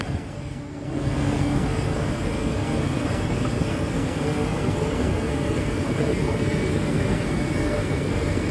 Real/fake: fake